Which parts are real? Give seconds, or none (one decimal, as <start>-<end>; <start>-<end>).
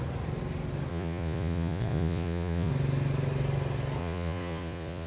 0.0-0.9; 2.7-4.0